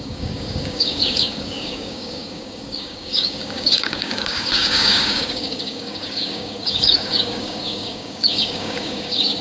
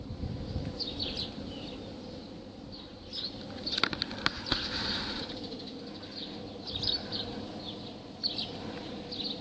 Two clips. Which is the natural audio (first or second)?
second